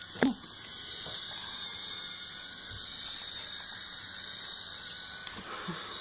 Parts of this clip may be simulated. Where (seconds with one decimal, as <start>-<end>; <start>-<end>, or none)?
none